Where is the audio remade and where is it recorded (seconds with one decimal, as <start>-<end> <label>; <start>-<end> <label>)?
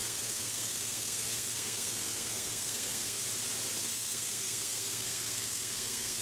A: 0.0-3.2 remade; 3.2-3.8 recorded; 3.8-6.2 remade